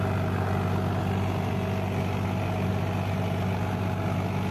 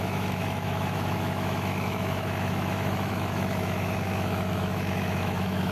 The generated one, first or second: second